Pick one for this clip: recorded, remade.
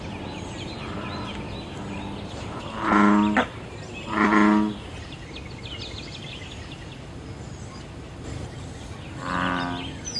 recorded